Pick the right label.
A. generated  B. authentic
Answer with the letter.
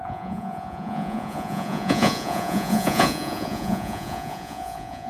A